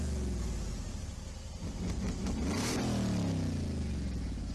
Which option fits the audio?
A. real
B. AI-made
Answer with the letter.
A